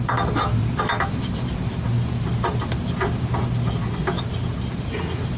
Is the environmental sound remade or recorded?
recorded